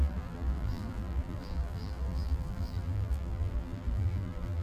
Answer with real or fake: fake